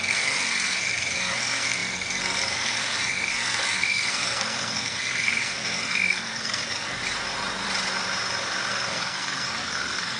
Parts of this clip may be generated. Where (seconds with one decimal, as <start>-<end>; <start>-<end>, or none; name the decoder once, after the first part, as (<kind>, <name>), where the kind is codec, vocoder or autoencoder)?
0.0-7.0 (codec, SNAC); 8.7-10.2